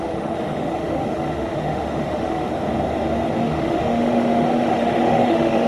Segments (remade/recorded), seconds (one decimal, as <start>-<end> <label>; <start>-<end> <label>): 0.0-2.5 remade; 2.5-3.4 recorded; 3.4-5.7 remade